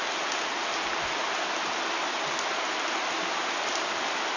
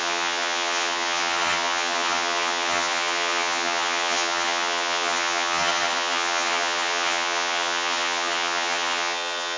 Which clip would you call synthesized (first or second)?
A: second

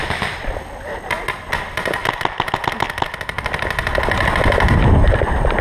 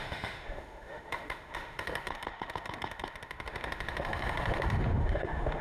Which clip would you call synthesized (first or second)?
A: second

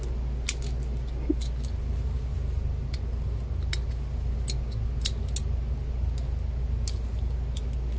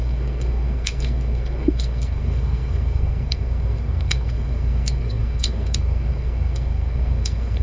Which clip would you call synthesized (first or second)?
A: second